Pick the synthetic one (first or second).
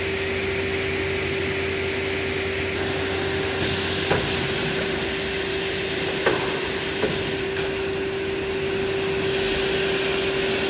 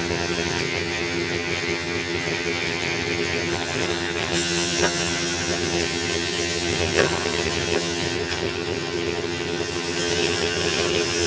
second